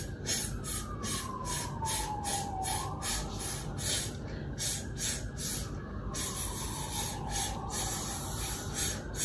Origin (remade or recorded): recorded